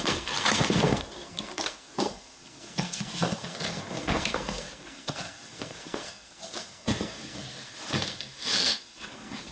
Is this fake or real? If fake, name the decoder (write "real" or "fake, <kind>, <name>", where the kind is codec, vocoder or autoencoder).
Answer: fake, codec, SNAC